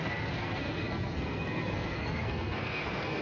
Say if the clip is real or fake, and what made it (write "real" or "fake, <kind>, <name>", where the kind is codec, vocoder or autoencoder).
fake, codec, SNAC